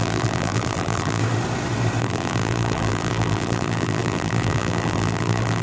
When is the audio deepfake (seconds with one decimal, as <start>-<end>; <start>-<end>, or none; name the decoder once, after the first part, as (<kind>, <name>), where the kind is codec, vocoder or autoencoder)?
0.0-1.2 (vocoder, BigVGAN v2); 2.0-5.6